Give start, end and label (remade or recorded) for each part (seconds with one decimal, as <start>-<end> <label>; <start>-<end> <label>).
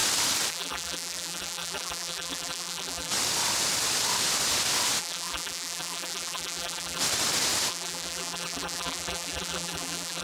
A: 0.0-0.5 recorded; 0.5-3.1 remade; 3.1-5.0 recorded; 5.0-7.0 remade; 7.0-7.7 recorded; 7.7-10.2 remade